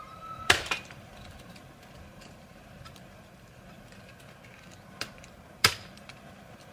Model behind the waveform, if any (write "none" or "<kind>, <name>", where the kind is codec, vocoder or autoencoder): vocoder, BigVGAN v2